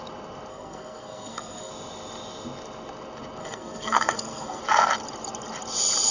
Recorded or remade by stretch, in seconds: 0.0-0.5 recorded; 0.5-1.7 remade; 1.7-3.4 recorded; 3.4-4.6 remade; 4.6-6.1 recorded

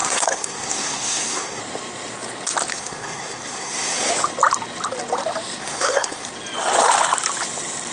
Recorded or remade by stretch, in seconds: 0.0-1.6 remade; 1.6-2.7 recorded; 2.7-4.1 remade; 4.1-5.6 recorded; 5.6-6.3 remade; 6.3-7.9 recorded

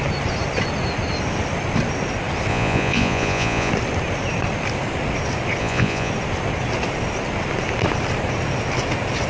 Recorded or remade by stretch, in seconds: 0.0-2.5 recorded; 2.5-3.7 remade; 3.7-5.6 recorded; 5.6-6.1 remade; 6.1-9.3 recorded

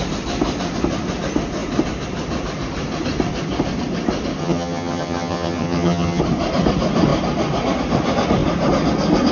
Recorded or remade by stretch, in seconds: 0.0-4.4 recorded; 4.4-6.2 remade; 6.2-9.3 recorded

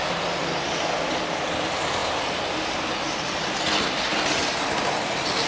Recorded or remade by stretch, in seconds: 0.0-5.5 recorded

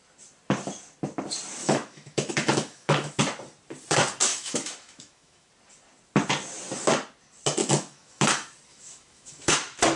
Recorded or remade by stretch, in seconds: 0.0-1.6 recorded; 1.6-3.2 remade; 3.2-4.3 recorded; 4.3-5.5 remade; 5.5-7.6 recorded; 7.6-8.2 remade; 8.2-8.7 recorded; 8.7-9.5 remade; 9.5-10.0 recorded

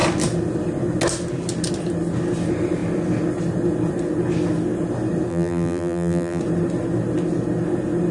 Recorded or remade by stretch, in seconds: 0.0-5.3 recorded; 5.3-6.4 remade; 6.4-8.1 recorded